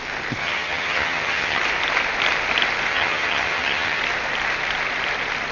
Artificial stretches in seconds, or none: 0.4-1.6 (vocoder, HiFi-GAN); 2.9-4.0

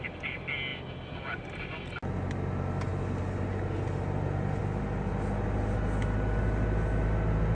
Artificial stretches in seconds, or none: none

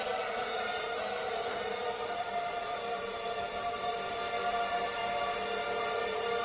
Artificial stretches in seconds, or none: 0.0-5.0 (vocoder, BigVGAN v2); 5.8-6.4